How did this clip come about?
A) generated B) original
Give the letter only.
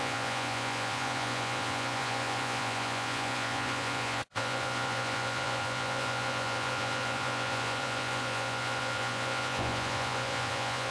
A